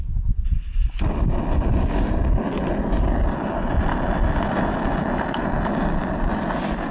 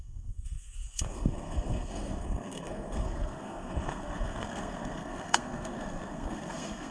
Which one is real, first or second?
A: first